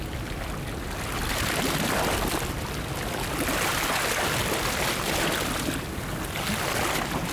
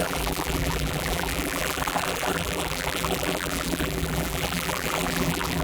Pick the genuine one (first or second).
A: first